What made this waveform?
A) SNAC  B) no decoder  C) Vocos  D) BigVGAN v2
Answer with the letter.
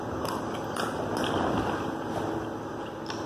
B